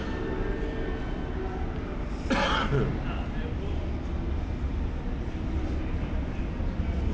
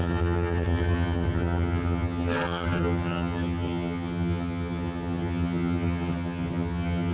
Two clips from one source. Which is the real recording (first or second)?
first